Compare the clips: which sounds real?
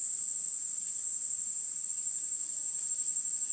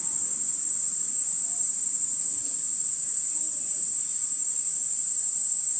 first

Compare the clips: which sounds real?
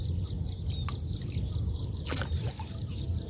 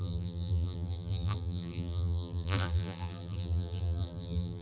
first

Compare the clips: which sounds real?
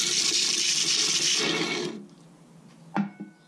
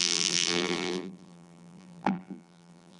first